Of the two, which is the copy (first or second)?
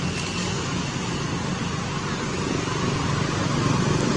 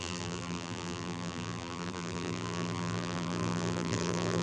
second